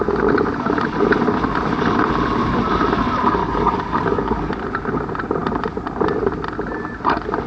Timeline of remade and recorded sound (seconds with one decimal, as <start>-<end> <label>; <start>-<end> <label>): 0.0-3.4 recorded; 3.4-4.5 remade; 4.5-7.5 recorded